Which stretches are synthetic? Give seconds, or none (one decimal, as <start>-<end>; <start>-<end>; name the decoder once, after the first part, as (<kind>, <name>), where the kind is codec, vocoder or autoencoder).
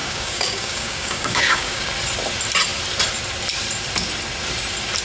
0.0-1.9 (codec, DAC)